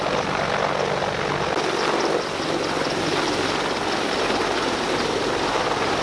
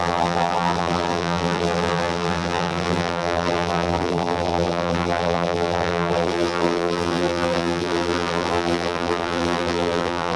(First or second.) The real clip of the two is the first